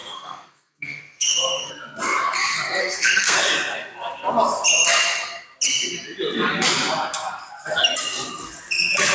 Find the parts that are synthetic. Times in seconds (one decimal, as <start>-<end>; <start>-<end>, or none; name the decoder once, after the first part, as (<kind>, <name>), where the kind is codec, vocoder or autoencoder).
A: 0.0-1.7 (codec, SNAC); 2.8-3.4